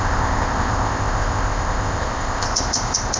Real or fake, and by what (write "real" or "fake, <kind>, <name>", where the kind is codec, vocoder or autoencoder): fake, codec, ZipCodec